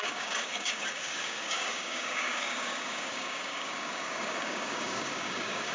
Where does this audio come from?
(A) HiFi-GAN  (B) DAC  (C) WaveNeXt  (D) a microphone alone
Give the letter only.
B